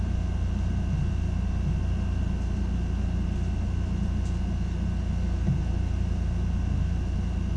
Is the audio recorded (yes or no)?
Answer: yes